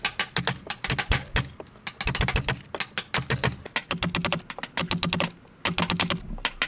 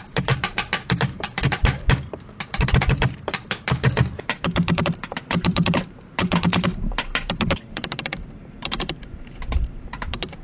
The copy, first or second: second